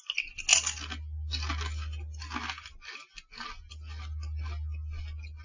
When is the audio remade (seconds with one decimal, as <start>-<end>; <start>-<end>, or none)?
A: none